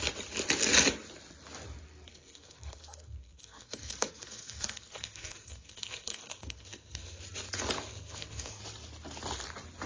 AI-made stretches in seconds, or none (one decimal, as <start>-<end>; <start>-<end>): 2.1-7.2; 7.9-8.6